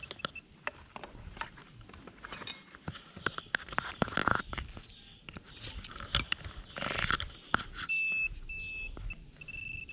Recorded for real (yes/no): yes